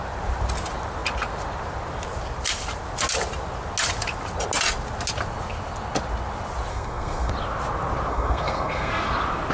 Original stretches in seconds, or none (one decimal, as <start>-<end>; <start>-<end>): 0.0-6.7; 7.3-8.1; 8.9-9.5